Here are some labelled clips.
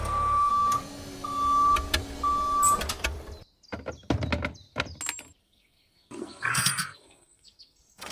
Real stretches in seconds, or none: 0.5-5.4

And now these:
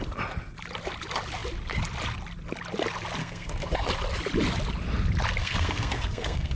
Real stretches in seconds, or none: 0.0-3.2; 3.9-5.4